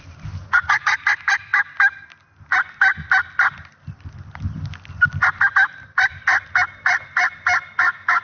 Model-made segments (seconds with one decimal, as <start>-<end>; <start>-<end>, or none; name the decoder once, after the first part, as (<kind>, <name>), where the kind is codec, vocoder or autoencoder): 0.4-0.9 (vocoder, Vocos)